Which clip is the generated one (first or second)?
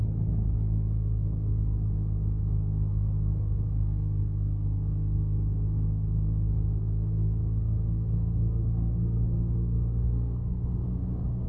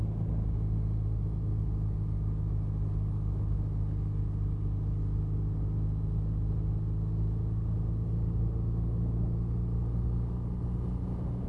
first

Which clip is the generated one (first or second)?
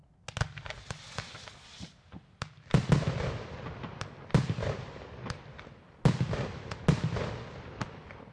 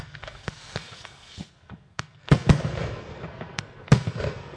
second